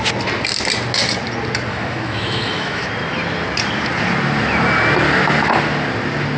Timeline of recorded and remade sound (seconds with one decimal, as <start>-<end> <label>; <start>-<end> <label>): 0.0-1.7 recorded; 1.7-2.8 remade; 2.8-6.4 recorded